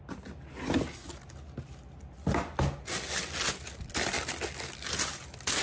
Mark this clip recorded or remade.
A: recorded